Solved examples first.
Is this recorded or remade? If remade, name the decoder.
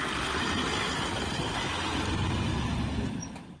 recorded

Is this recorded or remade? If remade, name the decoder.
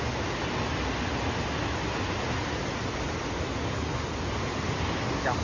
recorded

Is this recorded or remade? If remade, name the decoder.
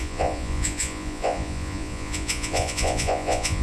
remade, vocoder, Vocos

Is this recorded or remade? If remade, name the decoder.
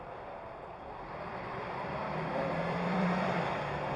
remade, vocoder, BigVGAN v2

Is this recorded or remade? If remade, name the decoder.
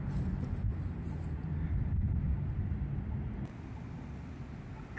recorded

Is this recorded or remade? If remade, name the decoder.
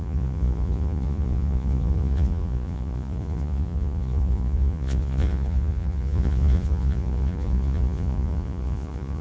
remade, vocoder, Vocos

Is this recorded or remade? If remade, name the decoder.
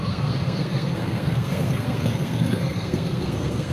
remade, codec, SNAC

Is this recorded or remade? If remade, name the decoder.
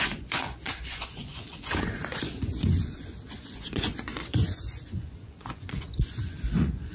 remade, vocoder, Vocos